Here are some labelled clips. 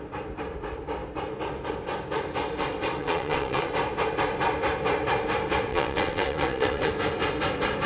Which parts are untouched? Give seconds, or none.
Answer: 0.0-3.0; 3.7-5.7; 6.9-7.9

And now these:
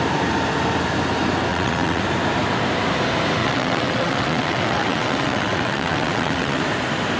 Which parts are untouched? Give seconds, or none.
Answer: 0.0-1.5; 2.0-3.4; 6.6-7.2

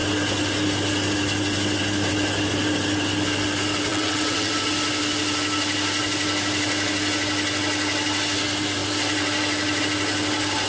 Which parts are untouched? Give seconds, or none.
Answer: 0.0-3.9; 4.5-10.7

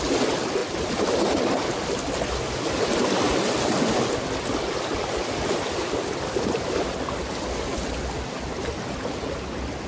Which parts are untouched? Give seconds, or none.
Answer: 0.0-9.9

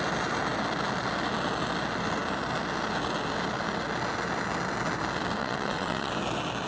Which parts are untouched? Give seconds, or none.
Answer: 0.0-5.4; 6.1-6.7

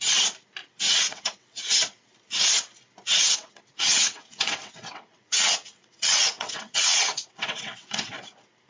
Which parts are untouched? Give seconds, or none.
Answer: 0.0-0.6; 1.6-3.2; 8.1-8.7

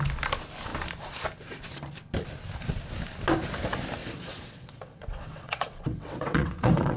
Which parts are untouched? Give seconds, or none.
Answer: 0.0-4.0